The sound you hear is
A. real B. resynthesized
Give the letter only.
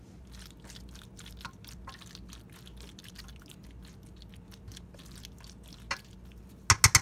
A